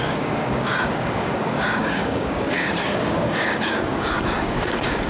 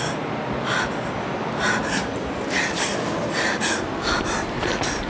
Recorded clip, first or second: second